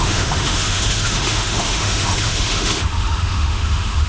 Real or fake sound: fake